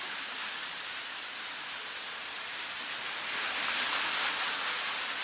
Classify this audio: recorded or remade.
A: recorded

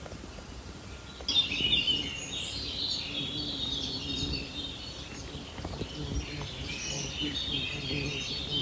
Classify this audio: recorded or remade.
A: recorded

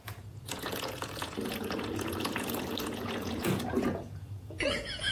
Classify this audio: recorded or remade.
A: remade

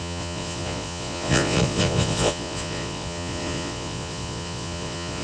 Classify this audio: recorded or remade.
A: remade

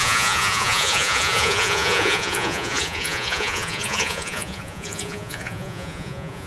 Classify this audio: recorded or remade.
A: remade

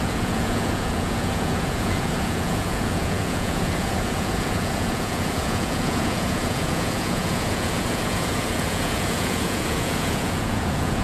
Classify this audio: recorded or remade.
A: remade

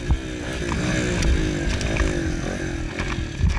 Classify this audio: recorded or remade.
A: recorded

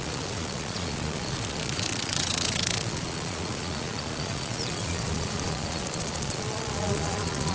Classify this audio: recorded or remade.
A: remade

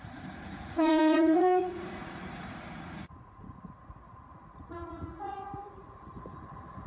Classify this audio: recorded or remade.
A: remade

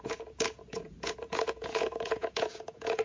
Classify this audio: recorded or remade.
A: remade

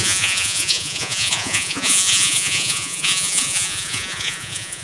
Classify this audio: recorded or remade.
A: remade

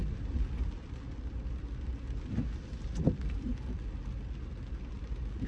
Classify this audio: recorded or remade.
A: recorded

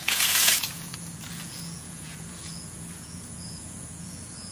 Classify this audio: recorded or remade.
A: remade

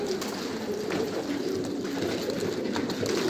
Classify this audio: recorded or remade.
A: recorded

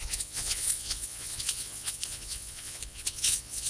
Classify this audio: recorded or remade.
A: remade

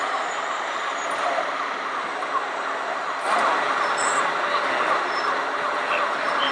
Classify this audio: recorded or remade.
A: recorded